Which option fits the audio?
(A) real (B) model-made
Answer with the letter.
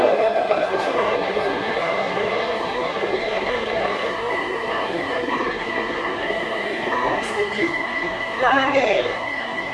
B